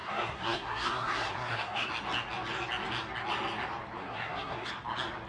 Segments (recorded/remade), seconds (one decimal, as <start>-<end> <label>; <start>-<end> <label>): 0.0-1.9 remade; 1.9-4.0 recorded; 4.0-4.7 remade; 4.7-5.3 recorded